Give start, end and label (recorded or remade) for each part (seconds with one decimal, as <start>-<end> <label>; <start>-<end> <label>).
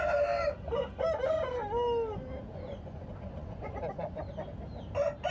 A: 0.0-2.5 recorded; 2.5-4.2 remade; 4.2-5.3 recorded